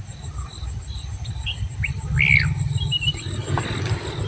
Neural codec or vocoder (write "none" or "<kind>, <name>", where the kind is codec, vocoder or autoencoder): none